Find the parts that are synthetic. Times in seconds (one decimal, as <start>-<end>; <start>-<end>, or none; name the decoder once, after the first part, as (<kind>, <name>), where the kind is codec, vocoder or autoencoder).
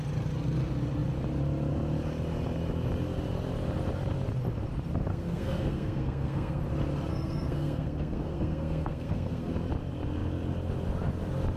5.1-6.6 (codec, SNAC); 7.1-9.5